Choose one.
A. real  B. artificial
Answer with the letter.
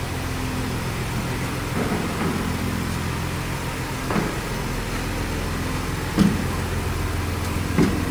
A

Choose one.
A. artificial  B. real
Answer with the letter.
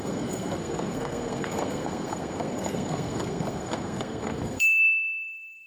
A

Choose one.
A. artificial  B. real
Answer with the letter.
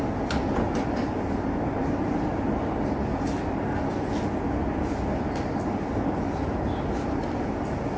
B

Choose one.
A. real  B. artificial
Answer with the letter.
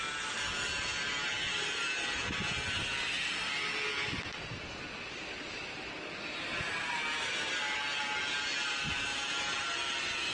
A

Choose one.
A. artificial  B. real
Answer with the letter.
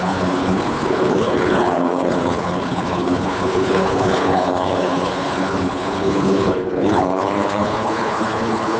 A